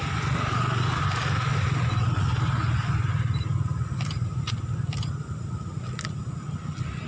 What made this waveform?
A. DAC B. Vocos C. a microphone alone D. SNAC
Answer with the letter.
C